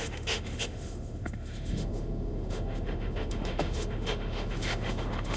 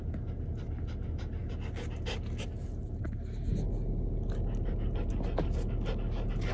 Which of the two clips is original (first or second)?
second